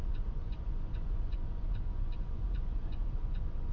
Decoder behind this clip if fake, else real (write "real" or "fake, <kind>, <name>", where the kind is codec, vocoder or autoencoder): fake, vocoder, Vocos